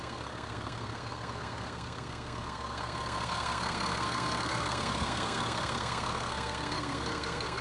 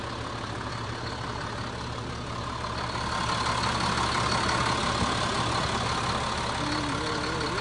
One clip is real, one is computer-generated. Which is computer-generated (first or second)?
first